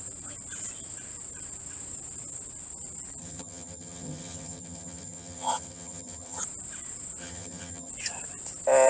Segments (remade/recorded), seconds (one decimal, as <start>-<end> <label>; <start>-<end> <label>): 0.0-3.2 recorded; 3.2-6.4 remade; 6.4-7.2 recorded; 7.2-7.9 remade; 7.9-8.9 recorded